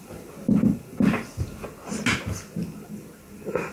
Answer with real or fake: real